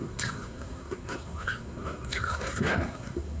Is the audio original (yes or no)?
no